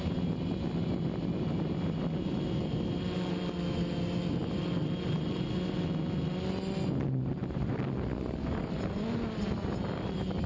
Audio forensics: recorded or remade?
recorded